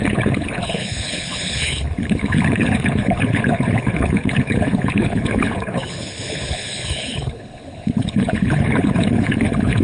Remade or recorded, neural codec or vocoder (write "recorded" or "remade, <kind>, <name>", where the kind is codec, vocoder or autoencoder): remade, codec, HILCodec